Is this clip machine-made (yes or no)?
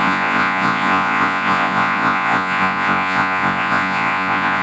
yes